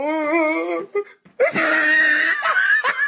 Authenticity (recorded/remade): recorded